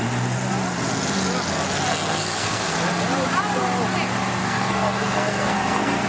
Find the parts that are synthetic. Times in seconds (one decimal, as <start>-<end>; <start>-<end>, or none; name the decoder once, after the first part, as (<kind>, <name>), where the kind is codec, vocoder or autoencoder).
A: 1.9-2.8 (codec, SNAC); 4.4-6.1